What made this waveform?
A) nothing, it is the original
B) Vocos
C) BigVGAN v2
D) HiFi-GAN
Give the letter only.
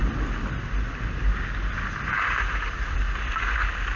A